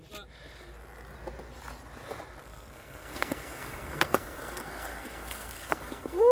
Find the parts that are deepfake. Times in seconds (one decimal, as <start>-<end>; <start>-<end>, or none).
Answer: 2.4-6.3

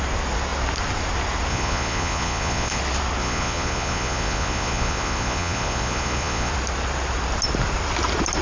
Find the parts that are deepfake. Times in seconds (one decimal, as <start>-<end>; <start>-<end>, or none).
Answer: 1.5-2.8; 3.2-6.5

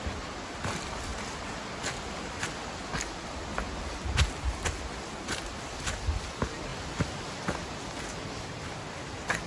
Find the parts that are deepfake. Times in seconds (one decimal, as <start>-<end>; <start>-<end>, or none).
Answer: none

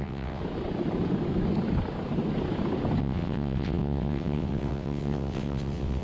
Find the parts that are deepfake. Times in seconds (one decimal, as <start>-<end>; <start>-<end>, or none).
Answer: 0.0-0.4; 3.0-6.0

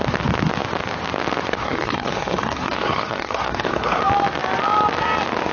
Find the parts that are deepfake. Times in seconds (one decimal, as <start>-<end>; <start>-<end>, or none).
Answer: 1.6-4.0